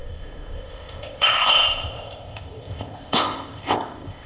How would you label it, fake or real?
fake